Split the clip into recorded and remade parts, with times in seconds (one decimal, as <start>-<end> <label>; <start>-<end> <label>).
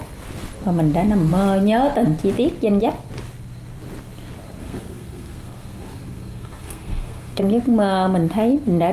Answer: 0.0-4.6 recorded; 4.6-7.4 remade; 7.4-8.9 recorded